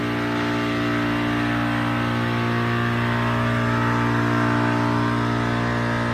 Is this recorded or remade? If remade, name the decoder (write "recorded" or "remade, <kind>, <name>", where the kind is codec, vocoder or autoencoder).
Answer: recorded